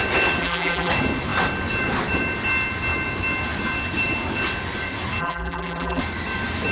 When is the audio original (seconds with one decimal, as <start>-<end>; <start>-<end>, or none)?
0.0-0.4; 0.9-5.2; 6.0-6.7